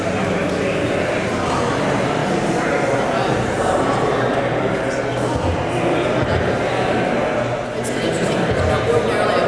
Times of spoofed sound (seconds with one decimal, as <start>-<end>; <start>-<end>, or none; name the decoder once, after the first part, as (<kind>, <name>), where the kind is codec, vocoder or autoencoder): none